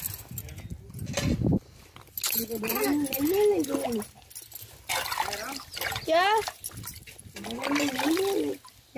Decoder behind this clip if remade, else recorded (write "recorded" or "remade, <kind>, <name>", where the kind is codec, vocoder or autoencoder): recorded